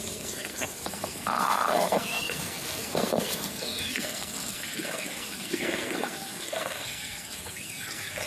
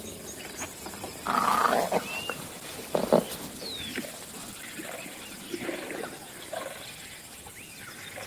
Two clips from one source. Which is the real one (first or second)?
second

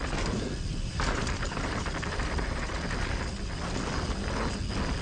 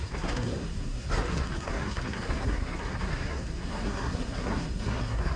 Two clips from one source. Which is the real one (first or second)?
first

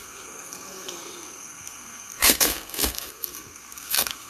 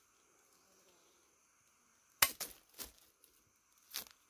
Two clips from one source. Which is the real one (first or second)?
second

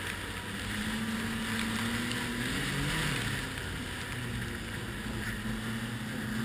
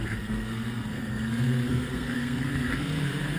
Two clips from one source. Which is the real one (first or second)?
first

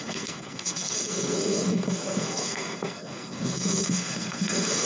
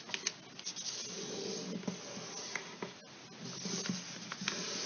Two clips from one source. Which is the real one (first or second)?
second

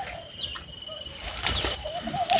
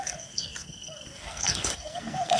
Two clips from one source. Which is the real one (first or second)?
first